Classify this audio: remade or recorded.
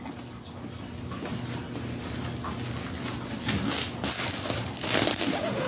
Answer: recorded